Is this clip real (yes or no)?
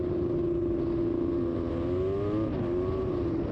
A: yes